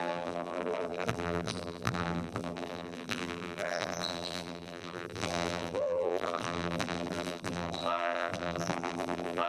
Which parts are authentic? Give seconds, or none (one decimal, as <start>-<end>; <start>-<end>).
none